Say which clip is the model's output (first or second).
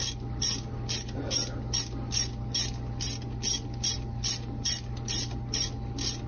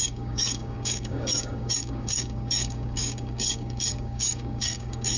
second